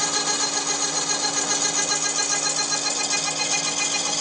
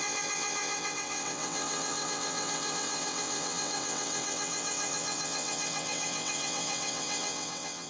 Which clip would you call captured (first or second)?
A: first